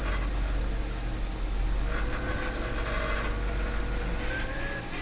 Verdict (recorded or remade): recorded